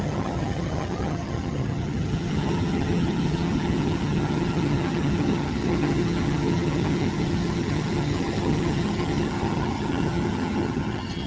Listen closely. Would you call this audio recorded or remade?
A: remade